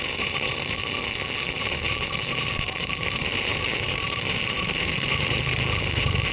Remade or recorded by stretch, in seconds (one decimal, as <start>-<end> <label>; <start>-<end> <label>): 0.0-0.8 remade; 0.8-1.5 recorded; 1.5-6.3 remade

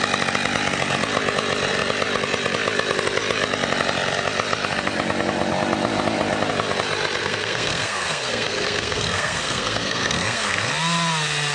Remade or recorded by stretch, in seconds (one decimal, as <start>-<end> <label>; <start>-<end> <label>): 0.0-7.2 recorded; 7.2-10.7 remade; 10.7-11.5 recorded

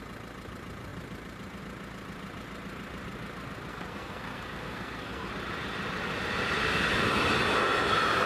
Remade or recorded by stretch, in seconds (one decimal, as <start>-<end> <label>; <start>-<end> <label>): 0.0-3.7 recorded; 3.7-5.3 remade; 5.3-8.3 recorded